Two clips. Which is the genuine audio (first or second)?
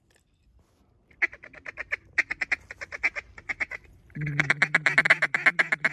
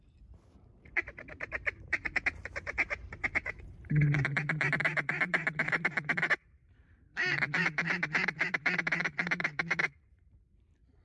first